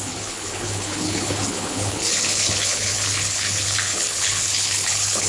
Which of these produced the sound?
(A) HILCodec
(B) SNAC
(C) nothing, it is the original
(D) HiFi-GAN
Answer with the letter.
A